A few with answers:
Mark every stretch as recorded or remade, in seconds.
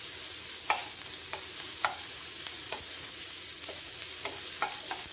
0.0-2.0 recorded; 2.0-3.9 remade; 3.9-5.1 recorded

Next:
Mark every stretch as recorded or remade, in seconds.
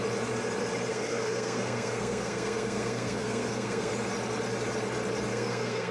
0.0-0.9 recorded; 0.9-3.9 remade; 3.9-5.3 recorded; 5.3-5.9 remade